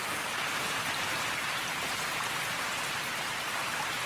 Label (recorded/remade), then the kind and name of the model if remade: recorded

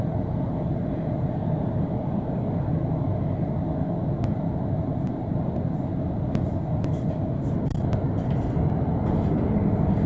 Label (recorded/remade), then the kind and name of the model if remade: recorded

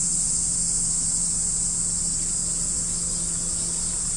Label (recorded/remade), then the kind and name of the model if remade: recorded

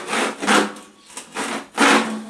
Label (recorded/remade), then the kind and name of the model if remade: recorded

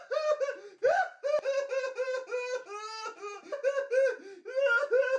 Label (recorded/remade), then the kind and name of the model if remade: recorded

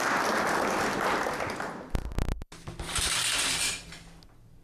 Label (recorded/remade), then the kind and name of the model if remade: recorded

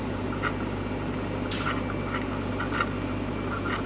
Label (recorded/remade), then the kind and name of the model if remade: recorded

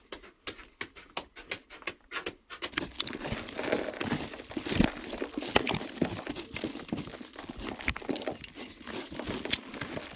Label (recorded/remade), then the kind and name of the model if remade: recorded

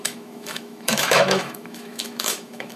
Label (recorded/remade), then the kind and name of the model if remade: remade, autoencoder, DAC-VAE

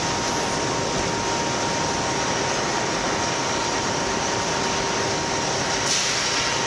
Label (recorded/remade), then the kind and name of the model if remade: recorded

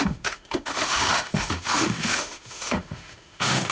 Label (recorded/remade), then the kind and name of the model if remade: remade, autoencoder, DAC-VAE